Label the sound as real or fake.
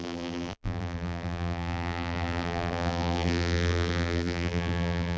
fake